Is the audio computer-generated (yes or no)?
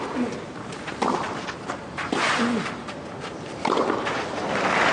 no